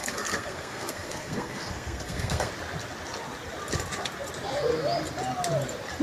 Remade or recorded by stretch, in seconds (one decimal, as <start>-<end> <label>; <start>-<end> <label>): 0.0-2.5 remade; 2.5-6.0 recorded